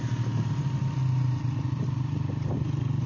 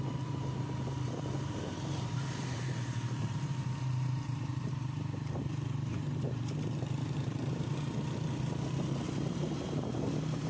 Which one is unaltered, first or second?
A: first